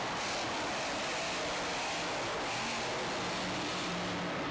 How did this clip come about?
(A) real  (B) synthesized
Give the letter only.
A